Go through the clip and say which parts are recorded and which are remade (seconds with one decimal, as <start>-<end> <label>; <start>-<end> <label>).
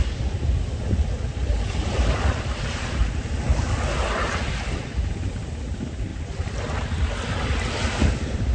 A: 0.0-8.5 recorded